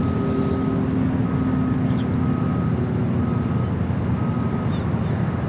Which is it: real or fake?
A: real